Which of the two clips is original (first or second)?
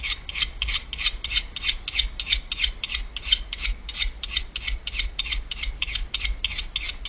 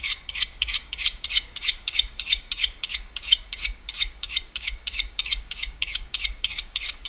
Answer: first